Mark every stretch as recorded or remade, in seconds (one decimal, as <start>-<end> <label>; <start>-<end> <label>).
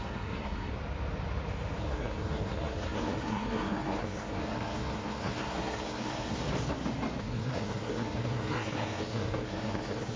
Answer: 0.0-0.7 remade; 0.7-1.8 recorded; 1.8-6.4 remade; 6.4-7.2 recorded; 7.2-10.2 remade